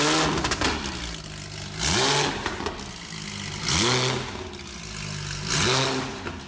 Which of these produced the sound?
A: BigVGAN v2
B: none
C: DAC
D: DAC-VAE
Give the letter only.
B